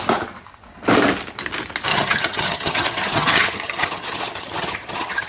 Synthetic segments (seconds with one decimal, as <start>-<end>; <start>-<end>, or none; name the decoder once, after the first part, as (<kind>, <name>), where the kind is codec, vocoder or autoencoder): 1.9-5.3 (vocoder, HiFi-GAN)

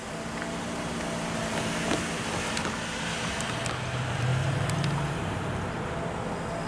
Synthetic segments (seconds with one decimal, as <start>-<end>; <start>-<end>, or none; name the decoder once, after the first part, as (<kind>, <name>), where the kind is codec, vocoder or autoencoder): none

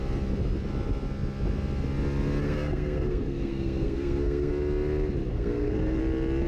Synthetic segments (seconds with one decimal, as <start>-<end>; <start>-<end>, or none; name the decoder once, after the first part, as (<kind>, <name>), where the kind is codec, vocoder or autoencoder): 2.4-4.5 (codec, SNAC); 5.3-6.0

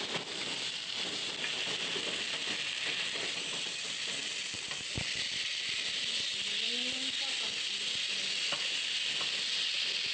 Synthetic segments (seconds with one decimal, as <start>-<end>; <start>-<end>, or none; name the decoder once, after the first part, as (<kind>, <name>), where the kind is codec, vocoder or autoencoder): none